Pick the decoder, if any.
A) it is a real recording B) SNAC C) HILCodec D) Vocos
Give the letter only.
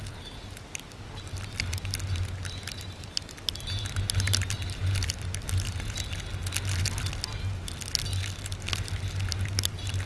A